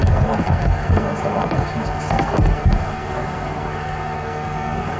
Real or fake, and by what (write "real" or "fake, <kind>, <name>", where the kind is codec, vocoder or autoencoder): fake, codec, SNAC